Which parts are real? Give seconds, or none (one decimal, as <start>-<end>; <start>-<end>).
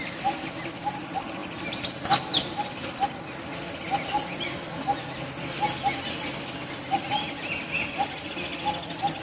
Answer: 0.0-9.2